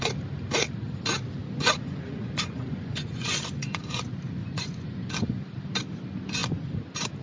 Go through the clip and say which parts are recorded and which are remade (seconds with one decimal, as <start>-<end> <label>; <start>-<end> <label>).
0.0-1.4 recorded; 1.4-3.8 remade; 3.8-4.4 recorded; 4.4-5.1 remade; 5.1-7.2 recorded